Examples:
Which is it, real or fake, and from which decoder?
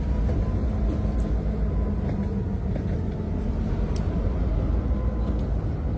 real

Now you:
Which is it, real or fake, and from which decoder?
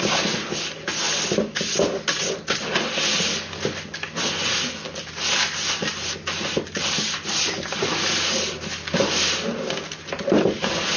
real